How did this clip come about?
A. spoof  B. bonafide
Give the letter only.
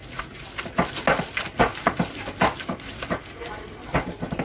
B